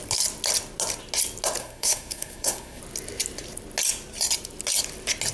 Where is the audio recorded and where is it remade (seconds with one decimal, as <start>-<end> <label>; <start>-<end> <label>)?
0.0-1.6 recorded; 1.6-2.8 remade; 2.8-5.3 recorded